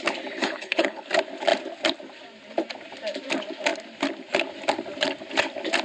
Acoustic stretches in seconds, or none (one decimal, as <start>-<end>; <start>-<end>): 0.0-0.4; 1.1-5.8